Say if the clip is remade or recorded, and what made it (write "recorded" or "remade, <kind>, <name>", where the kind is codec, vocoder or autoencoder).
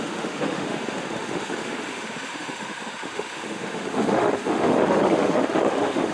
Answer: remade, autoencoder, DAC-VAE